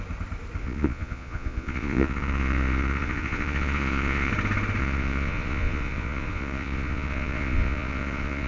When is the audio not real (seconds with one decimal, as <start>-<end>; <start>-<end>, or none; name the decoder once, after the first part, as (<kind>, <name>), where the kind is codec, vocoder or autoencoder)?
0.6-4.3 (vocoder, Vocos); 4.8-8.5